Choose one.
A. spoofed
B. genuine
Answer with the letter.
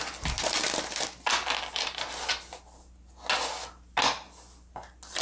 B